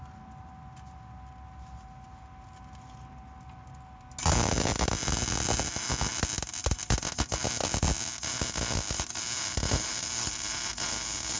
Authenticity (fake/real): real